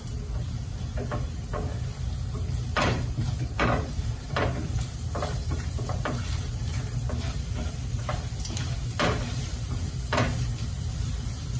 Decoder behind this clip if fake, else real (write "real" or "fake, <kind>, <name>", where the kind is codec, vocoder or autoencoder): fake, vocoder, BigVGAN v2